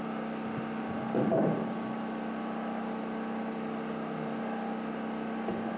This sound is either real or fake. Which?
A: real